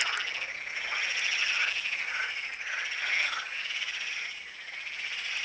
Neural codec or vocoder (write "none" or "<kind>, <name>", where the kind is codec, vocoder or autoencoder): none